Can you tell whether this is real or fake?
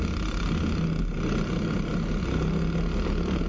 real